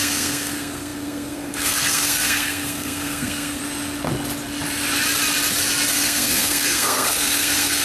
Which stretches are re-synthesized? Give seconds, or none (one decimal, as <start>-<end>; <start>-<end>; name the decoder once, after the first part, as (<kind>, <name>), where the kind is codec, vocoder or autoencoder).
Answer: 0.0-3.6 (codec, SNAC); 5.9-7.8